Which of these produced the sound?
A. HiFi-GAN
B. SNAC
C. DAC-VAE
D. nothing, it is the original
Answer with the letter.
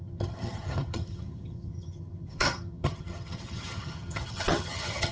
A